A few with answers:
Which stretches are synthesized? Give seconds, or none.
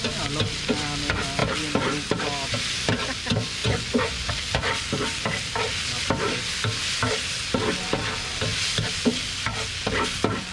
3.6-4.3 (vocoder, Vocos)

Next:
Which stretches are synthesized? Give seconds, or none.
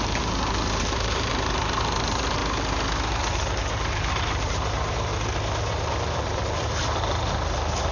0.0-2.4 (vocoder, BigVGAN v2); 3.1-5.1; 5.7-7.9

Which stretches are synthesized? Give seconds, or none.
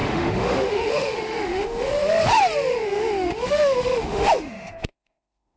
0.0-2.0 (autoencoder, DAC-VAE); 2.7-5.6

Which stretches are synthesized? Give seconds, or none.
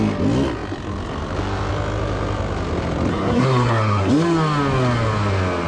3.1-4.1 (codec, SNAC)